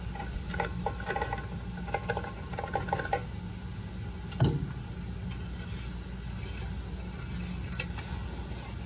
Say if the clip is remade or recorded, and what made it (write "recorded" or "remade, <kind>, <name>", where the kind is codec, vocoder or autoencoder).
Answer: recorded